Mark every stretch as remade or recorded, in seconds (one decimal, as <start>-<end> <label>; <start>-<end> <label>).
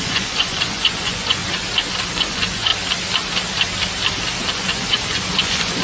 0.0-1.4 remade; 1.4-2.1 recorded; 2.1-2.7 remade; 2.7-4.5 recorded; 4.5-5.8 remade